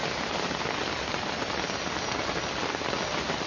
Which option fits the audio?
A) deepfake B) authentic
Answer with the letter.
B